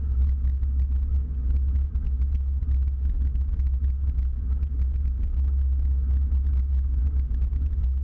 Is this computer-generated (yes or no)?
no